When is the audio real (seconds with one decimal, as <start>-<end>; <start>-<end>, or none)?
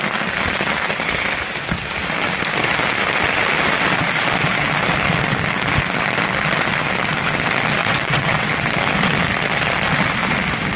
0.0-7.8; 8.7-10.8